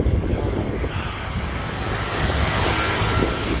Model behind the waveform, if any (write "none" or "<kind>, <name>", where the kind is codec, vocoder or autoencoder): codec, DAC